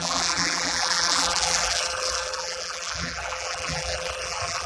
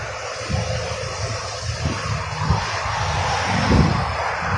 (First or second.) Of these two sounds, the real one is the second